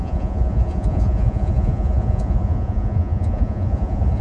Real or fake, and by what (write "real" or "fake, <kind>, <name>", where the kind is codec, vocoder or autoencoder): fake, vocoder, Vocos